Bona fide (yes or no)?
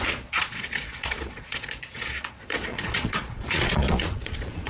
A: no